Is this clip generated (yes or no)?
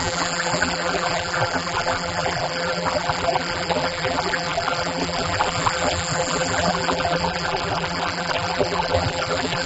yes